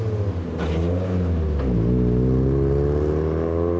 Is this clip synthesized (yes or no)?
no